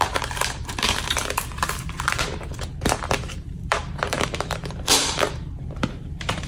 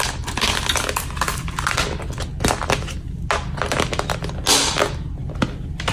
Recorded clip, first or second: second